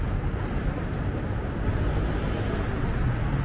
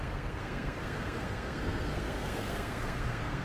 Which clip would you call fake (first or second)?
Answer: second